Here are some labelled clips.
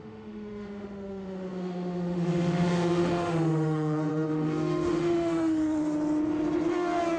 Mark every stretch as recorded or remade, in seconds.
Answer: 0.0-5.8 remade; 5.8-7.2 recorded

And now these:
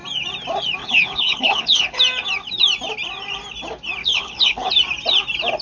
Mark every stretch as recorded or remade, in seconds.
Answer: 0.0-0.8 recorded; 0.8-2.0 remade; 2.0-4.0 recorded; 4.0-4.7 remade; 4.7-5.6 recorded

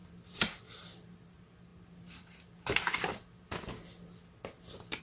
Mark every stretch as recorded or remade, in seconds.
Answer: 0.0-5.0 recorded

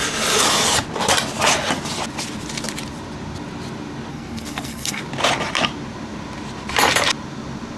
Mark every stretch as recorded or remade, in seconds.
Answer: 0.0-4.1 recorded; 4.1-5.0 remade; 5.0-7.8 recorded